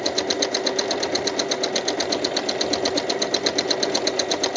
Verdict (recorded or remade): recorded